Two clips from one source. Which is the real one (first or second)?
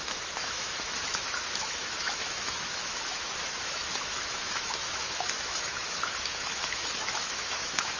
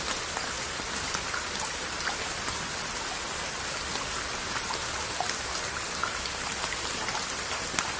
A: second